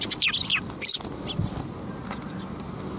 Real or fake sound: real